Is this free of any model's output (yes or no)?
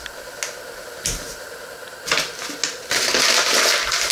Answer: yes